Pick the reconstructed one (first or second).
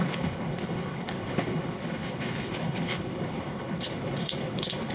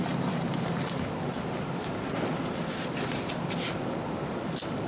first